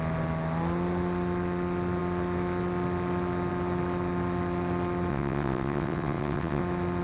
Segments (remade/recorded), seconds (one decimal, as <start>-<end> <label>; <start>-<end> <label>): 0.0-5.1 recorded; 5.1-6.6 remade; 6.6-7.0 recorded